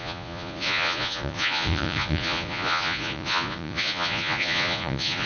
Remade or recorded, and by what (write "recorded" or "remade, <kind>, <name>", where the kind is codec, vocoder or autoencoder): remade, vocoder, Vocos